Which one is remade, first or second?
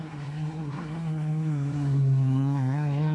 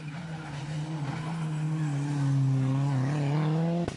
first